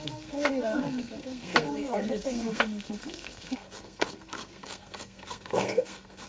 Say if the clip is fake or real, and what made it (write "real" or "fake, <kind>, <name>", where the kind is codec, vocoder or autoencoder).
fake, codec, SNAC